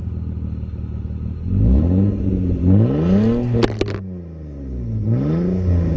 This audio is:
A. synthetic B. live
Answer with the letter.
B